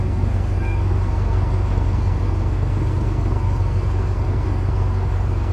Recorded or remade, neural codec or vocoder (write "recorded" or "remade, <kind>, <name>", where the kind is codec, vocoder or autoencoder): remade, codec, SNAC